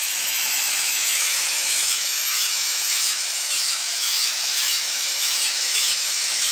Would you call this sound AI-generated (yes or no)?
yes